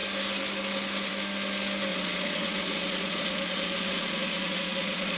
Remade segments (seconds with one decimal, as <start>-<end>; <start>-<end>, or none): 1.9-5.2